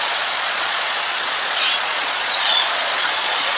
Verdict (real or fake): fake